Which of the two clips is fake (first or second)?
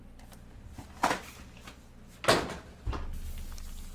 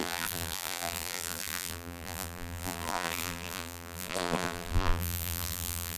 second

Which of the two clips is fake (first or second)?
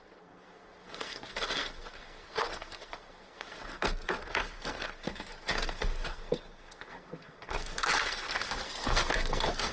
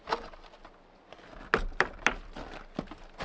first